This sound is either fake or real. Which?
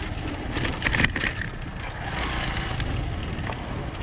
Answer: real